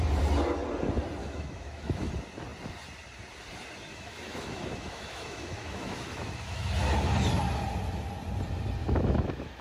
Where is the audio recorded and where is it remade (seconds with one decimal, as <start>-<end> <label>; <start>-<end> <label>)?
0.0-1.2 recorded; 1.2-2.1 remade; 2.1-3.9 recorded; 3.9-6.7 remade; 6.7-8.8 recorded; 8.8-9.6 remade